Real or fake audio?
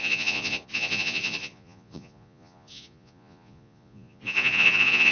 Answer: fake